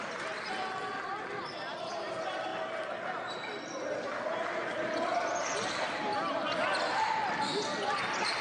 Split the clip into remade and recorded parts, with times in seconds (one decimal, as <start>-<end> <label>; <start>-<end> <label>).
0.0-8.4 recorded